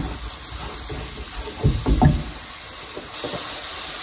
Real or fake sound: real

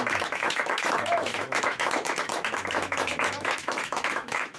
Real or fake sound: fake